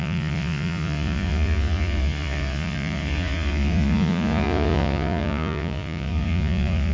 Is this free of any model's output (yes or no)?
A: no